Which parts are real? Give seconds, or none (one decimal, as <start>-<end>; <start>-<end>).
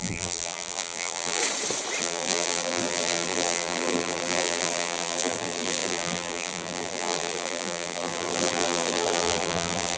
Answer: 1.4-2.0